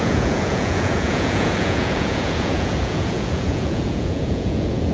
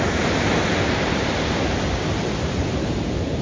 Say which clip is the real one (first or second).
second